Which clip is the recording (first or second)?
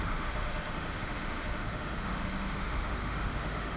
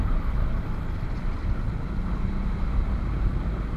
second